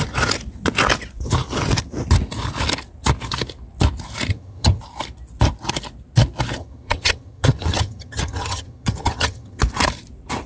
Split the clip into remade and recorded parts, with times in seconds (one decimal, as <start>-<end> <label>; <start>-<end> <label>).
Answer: 0.0-4.3 recorded; 4.3-4.8 remade; 4.8-6.6 recorded; 6.6-9.6 remade; 9.6-10.5 recorded